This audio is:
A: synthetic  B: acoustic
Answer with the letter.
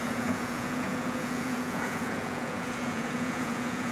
A